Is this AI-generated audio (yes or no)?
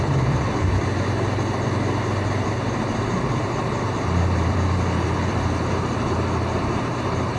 yes